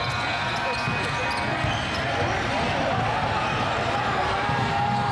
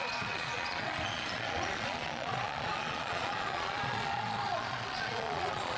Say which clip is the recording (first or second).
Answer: first